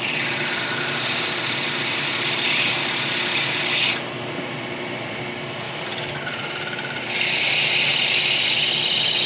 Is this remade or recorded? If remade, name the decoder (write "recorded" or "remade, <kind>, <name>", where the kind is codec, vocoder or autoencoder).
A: recorded